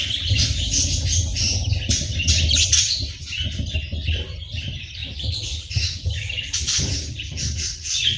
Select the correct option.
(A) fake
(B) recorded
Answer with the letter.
B